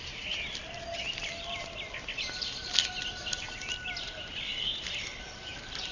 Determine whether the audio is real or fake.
real